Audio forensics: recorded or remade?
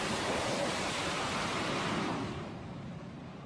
remade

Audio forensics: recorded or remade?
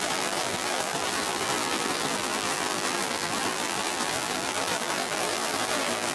remade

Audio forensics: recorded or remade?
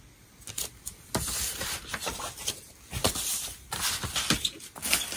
recorded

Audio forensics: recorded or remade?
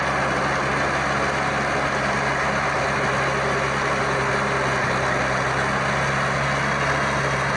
recorded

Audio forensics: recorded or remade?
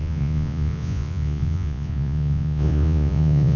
remade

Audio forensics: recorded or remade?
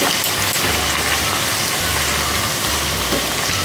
recorded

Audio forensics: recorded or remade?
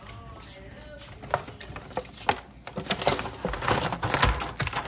recorded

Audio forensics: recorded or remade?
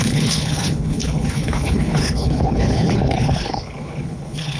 remade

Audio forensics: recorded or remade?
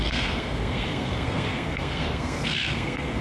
remade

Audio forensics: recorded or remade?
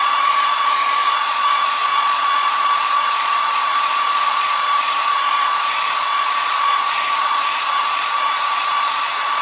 remade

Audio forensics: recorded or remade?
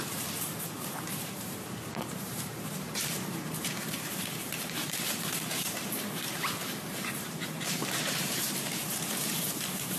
remade